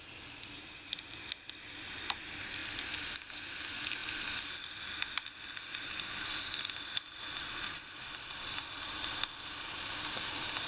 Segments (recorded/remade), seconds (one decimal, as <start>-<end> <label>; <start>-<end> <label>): 0.0-2.6 recorded; 2.6-3.3 remade; 3.3-4.0 recorded; 4.0-7.2 remade; 7.2-10.7 recorded